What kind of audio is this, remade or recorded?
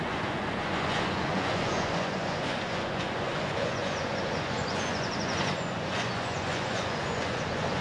remade